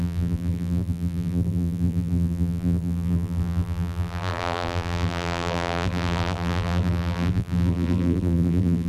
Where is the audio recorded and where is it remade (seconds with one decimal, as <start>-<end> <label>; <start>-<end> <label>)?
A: 0.0-8.9 remade